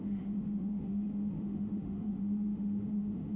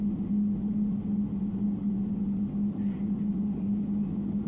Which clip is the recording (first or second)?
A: second